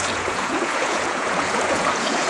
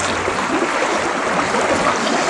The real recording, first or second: second